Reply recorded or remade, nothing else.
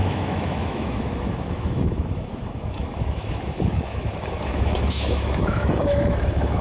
remade